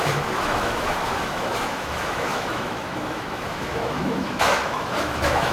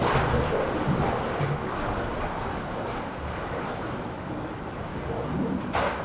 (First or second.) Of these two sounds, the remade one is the first